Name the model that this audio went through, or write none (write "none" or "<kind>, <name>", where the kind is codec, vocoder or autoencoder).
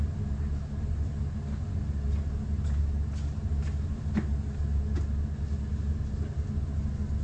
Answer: none